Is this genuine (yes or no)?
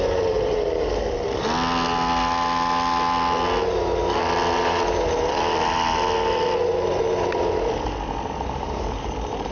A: yes